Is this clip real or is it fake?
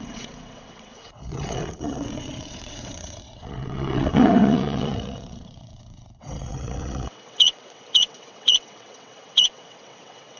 fake